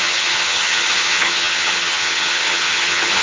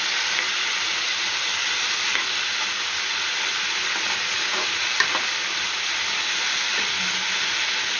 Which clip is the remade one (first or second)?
first